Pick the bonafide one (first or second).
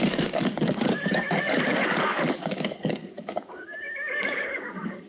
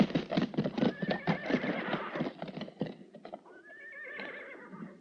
second